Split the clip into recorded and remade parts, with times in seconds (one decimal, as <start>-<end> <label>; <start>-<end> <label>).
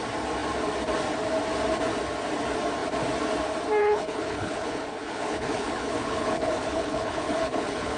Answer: 0.0-3.8 recorded; 3.8-8.0 remade